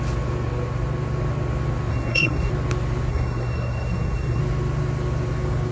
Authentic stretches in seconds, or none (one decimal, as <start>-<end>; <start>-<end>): 0.0-1.9; 2.5-3.1; 4.4-5.7